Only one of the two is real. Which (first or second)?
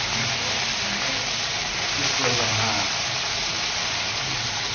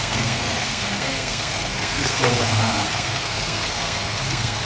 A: first